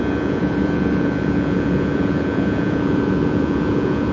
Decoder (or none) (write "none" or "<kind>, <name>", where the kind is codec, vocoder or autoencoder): vocoder, Vocos